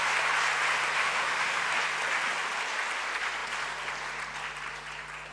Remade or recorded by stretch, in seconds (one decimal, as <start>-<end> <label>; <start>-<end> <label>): 0.0-1.0 recorded; 1.0-1.7 remade; 1.7-5.3 recorded